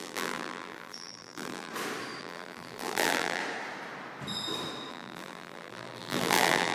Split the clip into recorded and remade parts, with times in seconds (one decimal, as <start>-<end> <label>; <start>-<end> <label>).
0.0-1.7 remade; 1.7-2.2 recorded; 2.2-3.4 remade; 3.4-4.9 recorded; 4.9-6.7 remade